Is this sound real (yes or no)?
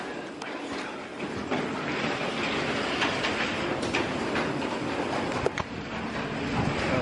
yes